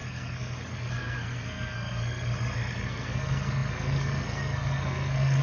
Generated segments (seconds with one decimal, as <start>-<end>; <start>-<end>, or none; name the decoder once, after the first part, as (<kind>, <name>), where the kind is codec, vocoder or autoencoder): 0.0-5.4 (codec, SNAC)